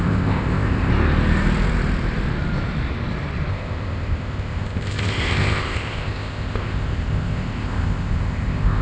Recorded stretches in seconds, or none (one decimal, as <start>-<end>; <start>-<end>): 0.9-3.5